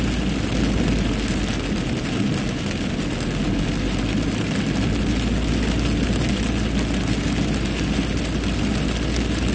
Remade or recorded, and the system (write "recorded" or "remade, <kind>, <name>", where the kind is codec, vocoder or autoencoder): recorded